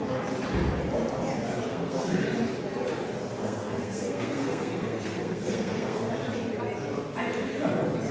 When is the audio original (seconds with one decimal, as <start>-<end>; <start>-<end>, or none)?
0.0-1.7; 2.2-3.4; 6.1-8.1